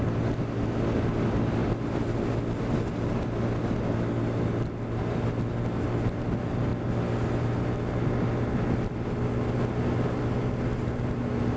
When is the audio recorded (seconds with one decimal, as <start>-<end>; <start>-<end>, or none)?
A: 0.0-11.6